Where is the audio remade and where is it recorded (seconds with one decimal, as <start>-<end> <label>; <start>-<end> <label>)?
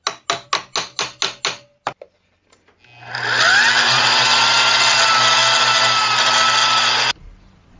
0.0-7.8 recorded